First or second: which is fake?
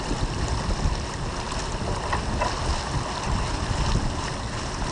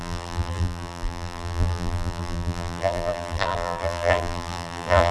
second